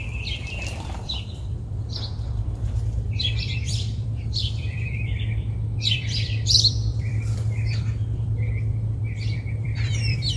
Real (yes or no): no